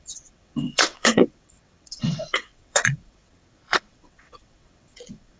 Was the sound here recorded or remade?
remade